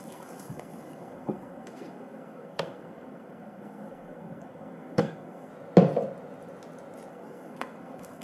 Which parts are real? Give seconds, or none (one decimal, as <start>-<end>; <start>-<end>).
5.5-7.1